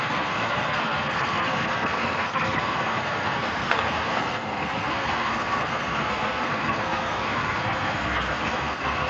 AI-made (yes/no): yes